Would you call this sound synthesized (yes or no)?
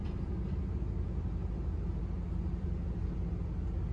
no